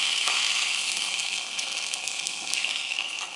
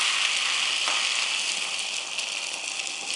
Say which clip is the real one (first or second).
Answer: second